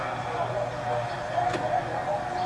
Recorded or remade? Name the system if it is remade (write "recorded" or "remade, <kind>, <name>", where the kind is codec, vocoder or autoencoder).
recorded